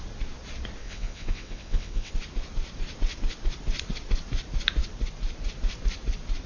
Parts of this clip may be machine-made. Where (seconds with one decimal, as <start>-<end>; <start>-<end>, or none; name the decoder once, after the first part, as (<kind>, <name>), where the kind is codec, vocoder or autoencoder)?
0.8-2.1 (vocoder, WaveNeXt)